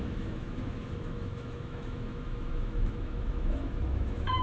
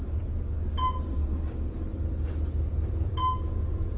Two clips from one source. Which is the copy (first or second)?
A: first